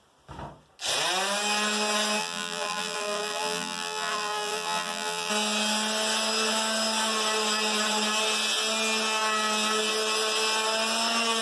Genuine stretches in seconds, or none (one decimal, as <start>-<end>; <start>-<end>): 0.0-2.2; 5.3-11.4

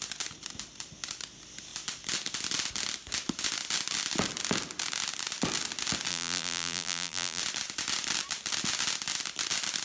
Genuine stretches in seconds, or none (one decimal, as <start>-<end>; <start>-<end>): 0.0-6.1; 7.4-9.8

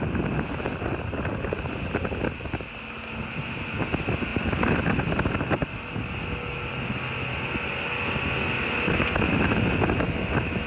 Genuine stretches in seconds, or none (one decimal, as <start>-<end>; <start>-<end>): 0.0-10.7

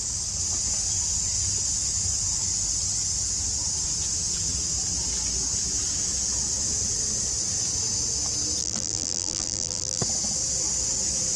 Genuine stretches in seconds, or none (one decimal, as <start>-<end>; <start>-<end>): 0.0-8.6; 10.0-11.4

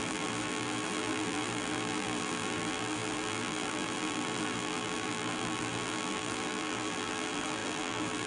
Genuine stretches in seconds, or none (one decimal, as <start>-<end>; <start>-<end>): none

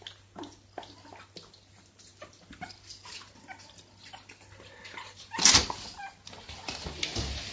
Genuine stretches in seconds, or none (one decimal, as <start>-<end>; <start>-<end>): 0.0-2.1; 6.2-7.5

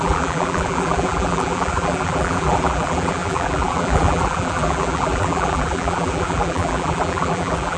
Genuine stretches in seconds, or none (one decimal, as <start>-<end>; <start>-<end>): none